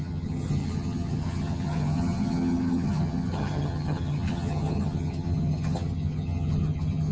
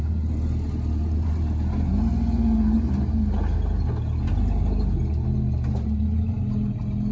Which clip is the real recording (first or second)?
second